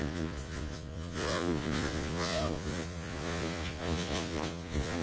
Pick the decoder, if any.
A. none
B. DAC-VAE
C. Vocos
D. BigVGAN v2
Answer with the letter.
C